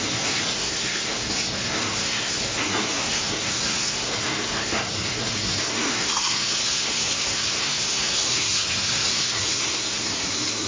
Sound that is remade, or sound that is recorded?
remade